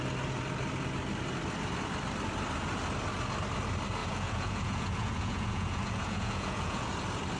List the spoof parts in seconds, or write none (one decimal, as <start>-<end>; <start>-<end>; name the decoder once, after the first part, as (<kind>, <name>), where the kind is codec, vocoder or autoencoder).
4.0-6.9 (vocoder, Vocos)